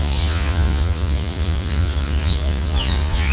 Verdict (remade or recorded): remade